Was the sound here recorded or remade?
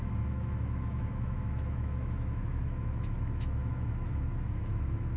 remade